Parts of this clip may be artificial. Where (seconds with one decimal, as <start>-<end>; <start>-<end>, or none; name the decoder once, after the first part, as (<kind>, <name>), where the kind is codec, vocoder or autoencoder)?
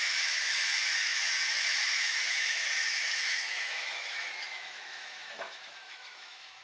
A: 0.0-6.6 (autoencoder, DAC-VAE)